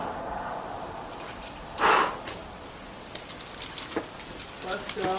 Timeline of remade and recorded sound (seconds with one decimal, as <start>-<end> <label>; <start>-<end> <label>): 0.0-5.2 recorded